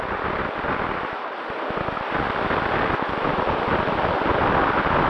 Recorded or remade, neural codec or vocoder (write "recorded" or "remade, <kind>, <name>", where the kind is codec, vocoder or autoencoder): remade, vocoder, BigVGAN v2